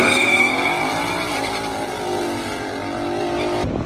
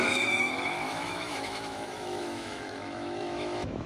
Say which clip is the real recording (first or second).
first